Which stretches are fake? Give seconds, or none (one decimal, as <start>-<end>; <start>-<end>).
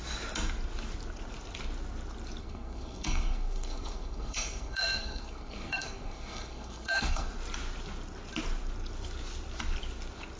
2.4-7.3